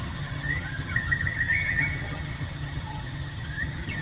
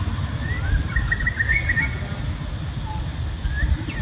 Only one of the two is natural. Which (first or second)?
second